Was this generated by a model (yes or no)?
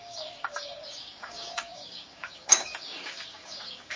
yes